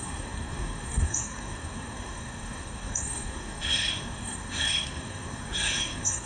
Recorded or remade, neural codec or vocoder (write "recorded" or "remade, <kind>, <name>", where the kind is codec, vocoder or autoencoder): remade, codec, SNAC